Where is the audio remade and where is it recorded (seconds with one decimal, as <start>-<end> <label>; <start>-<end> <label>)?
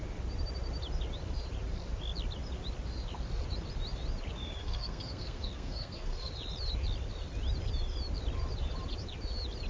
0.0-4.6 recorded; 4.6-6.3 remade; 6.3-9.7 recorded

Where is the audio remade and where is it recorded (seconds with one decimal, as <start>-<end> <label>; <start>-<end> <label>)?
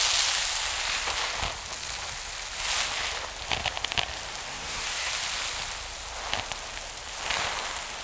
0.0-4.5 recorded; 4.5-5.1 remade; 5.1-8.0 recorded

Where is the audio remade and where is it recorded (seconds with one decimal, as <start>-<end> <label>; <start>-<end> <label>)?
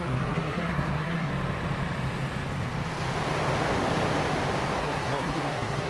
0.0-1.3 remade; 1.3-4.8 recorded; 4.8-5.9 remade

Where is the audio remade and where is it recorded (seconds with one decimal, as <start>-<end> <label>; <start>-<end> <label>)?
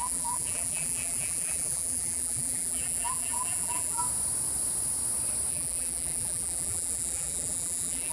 0.0-4.0 remade; 4.0-5.5 recorded; 5.5-8.1 remade